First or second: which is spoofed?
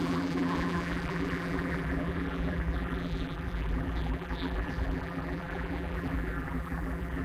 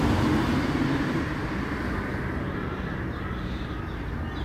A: first